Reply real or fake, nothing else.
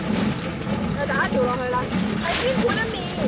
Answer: real